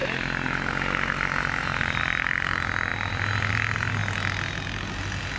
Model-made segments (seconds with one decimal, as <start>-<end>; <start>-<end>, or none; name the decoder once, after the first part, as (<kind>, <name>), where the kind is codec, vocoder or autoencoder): 0.0-2.0 (vocoder, BigVGAN v2)